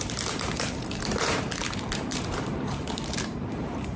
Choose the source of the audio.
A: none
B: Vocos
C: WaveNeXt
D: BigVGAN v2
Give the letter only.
D